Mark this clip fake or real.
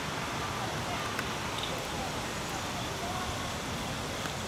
real